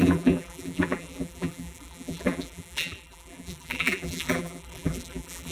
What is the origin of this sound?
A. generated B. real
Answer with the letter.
A